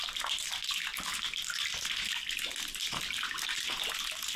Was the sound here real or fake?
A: real